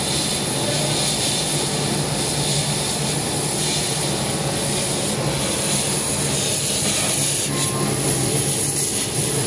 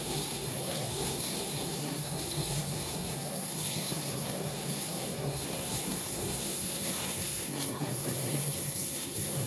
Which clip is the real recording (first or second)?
first